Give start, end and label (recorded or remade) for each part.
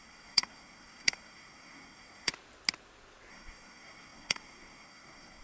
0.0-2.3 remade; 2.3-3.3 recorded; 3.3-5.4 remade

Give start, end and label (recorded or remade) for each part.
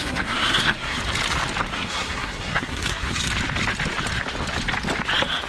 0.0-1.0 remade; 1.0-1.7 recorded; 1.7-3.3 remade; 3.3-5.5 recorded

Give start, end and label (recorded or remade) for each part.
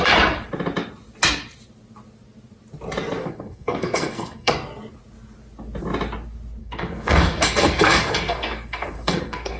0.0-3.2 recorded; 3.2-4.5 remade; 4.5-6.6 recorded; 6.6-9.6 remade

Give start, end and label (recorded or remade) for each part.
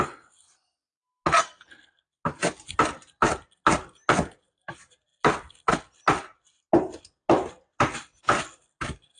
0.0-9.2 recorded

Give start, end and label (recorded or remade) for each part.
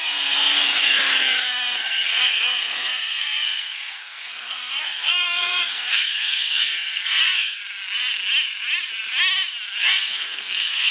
0.0-7.6 remade; 7.6-9.8 recorded; 9.8-10.9 remade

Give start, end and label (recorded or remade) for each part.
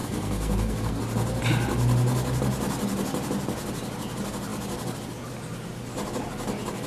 0.0-1.0 remade; 1.0-6.9 recorded